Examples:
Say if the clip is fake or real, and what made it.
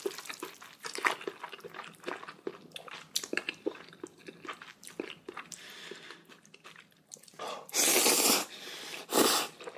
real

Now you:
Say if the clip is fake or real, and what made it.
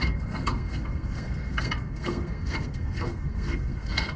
fake, codec, SNAC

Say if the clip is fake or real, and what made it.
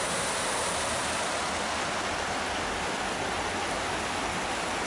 real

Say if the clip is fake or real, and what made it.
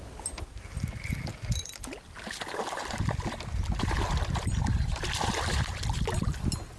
real